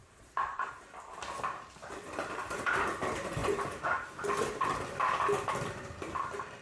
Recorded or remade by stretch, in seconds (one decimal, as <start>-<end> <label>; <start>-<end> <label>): 0.0-0.7 remade; 0.7-6.6 recorded